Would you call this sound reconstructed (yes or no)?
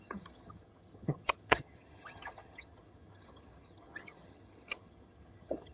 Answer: yes